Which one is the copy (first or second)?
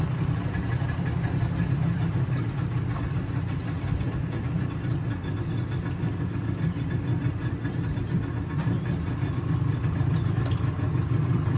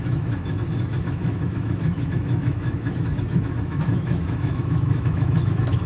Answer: second